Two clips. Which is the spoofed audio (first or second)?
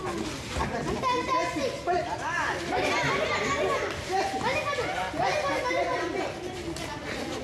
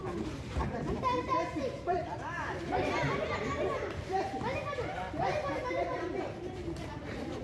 second